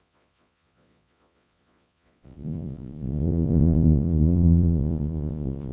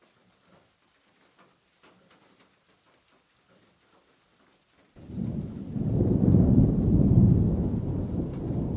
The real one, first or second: second